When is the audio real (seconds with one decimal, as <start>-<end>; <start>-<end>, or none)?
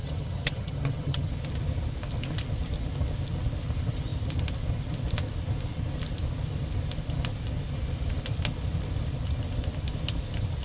1.3-10.6